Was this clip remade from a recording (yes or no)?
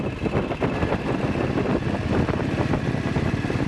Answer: no